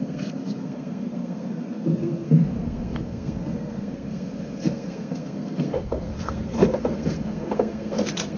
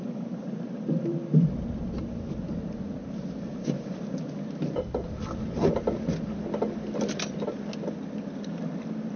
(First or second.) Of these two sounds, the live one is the second